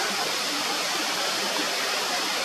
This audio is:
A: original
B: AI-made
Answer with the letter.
A